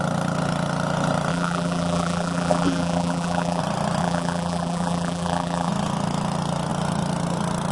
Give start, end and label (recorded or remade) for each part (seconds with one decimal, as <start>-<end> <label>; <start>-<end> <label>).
0.0-1.3 recorded; 1.3-3.6 remade; 3.6-4.0 recorded; 4.0-5.7 remade; 5.7-7.7 recorded